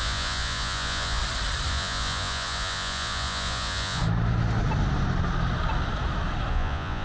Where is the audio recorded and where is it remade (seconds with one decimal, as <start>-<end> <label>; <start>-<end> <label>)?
0.0-1.2 remade; 1.2-1.7 recorded; 1.7-4.0 remade; 4.0-6.5 recorded; 6.5-7.0 remade